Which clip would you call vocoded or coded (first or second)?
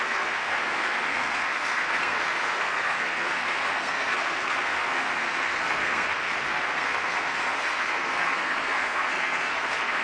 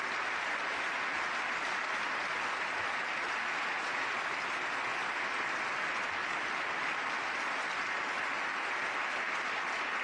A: first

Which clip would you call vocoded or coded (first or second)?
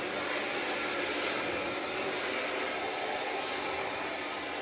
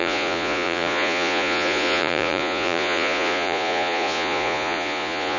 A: second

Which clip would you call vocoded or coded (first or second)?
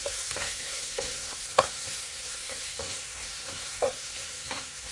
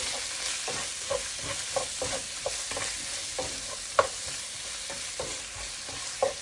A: first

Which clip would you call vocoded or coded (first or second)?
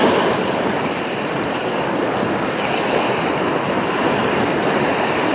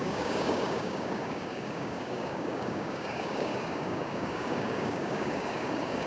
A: second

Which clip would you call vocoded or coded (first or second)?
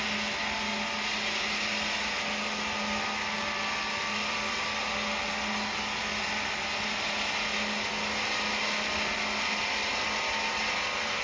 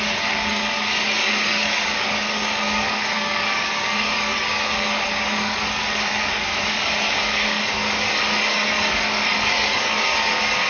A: second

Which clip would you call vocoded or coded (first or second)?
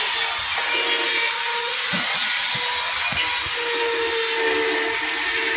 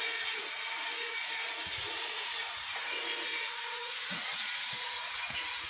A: second